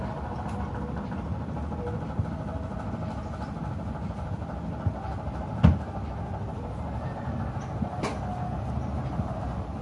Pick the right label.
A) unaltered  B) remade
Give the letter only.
A